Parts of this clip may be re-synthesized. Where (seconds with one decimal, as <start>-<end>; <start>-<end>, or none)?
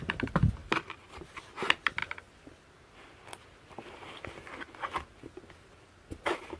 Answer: 0.6-1.2